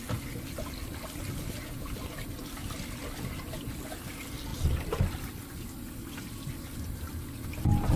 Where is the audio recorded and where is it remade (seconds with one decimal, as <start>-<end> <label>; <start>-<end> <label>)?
0.0-4.5 recorded; 4.5-5.3 remade; 5.3-8.0 recorded